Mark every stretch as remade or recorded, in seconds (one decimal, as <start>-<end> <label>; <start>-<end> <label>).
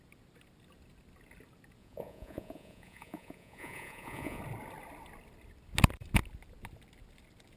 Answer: 0.0-1.8 recorded; 1.8-4.4 remade; 4.4-7.6 recorded